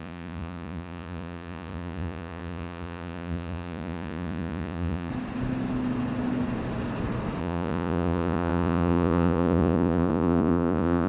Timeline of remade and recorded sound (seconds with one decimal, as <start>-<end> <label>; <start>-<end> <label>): 0.0-5.1 remade; 5.1-7.4 recorded; 7.4-11.1 remade